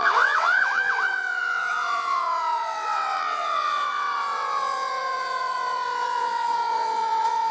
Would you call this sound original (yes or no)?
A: no